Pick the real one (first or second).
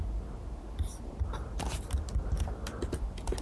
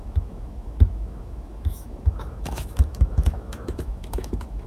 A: first